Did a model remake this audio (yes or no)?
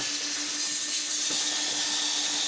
no